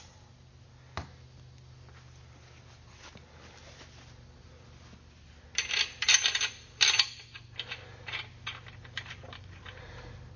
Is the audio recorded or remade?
recorded